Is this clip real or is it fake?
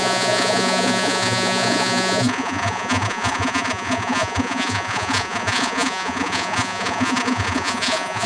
fake